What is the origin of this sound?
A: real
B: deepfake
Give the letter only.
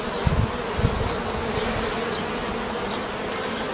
A